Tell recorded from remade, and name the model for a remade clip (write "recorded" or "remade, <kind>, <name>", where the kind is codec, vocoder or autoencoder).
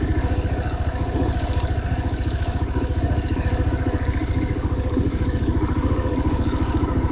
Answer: remade, codec, DAC